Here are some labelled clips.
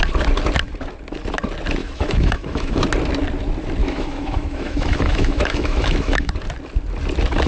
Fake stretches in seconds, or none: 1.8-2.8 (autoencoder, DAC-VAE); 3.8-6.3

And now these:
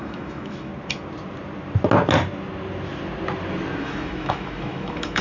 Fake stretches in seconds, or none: 0.0-0.7 (autoencoder, DAC-VAE); 3.8-5.2

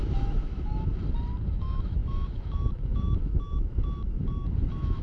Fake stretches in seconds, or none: 0.0-0.9 (autoencoder, DAC-VAE); 1.5-5.0

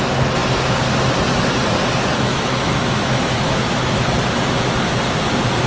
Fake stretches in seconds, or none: 2.3-4.1 (autoencoder, DAC-VAE)

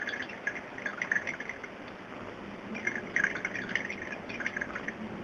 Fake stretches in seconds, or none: none